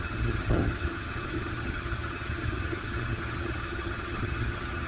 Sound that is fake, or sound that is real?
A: fake